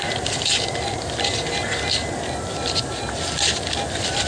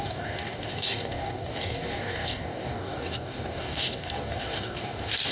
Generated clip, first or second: second